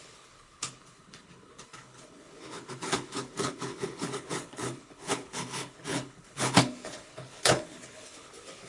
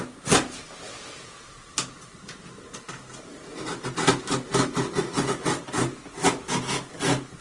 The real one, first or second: second